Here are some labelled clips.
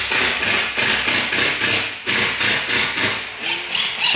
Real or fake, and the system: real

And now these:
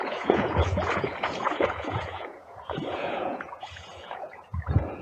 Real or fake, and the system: fake, vocoder, Vocos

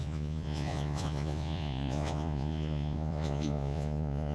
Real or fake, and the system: fake, vocoder, Vocos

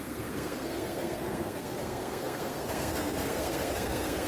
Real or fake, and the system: fake, codec, SNAC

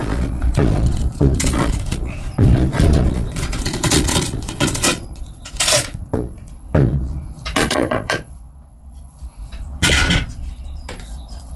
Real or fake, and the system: fake, vocoder, Vocos